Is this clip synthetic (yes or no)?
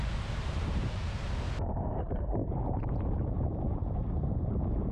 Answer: yes